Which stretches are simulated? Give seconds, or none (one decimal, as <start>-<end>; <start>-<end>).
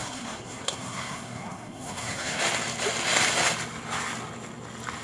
0.0-2.4